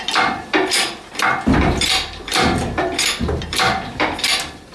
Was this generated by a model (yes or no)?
yes